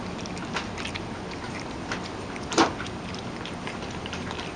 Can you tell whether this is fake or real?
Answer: real